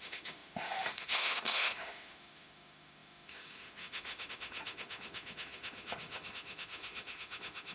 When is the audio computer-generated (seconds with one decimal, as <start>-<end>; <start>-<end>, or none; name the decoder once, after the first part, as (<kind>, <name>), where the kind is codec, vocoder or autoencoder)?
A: 0.0-7.7 (autoencoder, DAC-VAE)